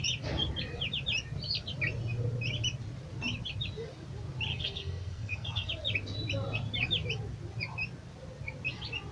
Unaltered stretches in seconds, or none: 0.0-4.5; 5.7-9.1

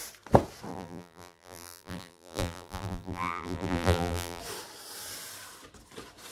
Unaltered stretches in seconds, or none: 0.0-0.7; 4.4-6.3